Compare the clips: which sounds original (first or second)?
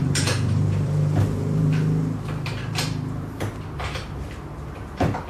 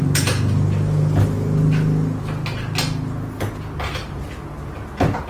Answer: second